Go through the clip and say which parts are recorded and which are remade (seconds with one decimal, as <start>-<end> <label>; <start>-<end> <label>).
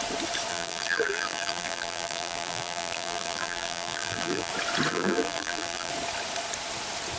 0.0-0.5 recorded; 0.5-4.5 remade; 4.5-4.9 recorded; 4.9-5.9 remade; 5.9-7.2 recorded